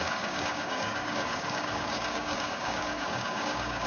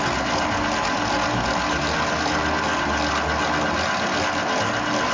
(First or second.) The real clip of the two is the second